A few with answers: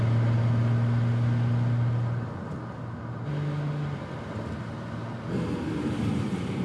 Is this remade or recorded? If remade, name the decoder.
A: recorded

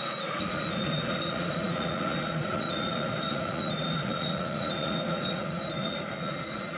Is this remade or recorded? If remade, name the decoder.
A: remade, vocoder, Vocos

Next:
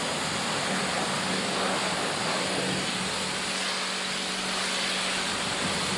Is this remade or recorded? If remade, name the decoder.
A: recorded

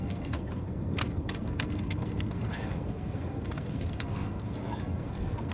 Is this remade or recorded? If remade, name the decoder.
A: remade, codec, SNAC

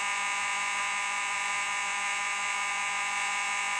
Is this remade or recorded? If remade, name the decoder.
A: remade, vocoder, Vocos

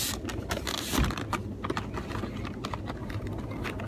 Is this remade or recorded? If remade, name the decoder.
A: recorded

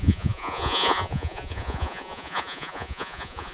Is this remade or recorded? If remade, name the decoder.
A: remade, vocoder, Vocos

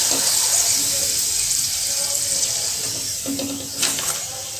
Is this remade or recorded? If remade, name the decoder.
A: recorded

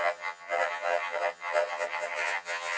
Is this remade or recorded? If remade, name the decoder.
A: remade, vocoder, HiFi-GAN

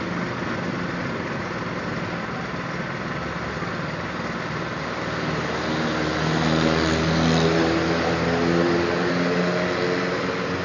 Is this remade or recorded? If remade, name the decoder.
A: recorded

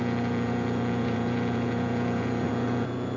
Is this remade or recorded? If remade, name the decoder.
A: remade, vocoder, Vocos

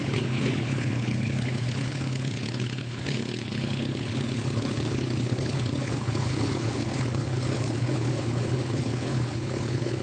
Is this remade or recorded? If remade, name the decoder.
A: remade, codec, HILCodec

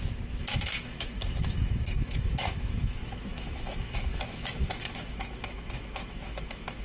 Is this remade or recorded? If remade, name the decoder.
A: remade, autoencoder, DAC-VAE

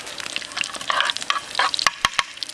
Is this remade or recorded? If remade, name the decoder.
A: recorded